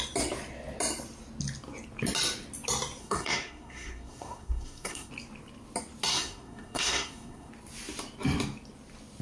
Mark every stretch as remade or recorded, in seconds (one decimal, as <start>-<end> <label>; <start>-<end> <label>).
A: 0.0-3.0 recorded; 3.0-5.1 remade; 5.1-6.1 recorded; 6.1-7.5 remade; 7.5-9.2 recorded